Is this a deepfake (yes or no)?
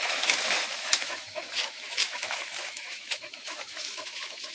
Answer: yes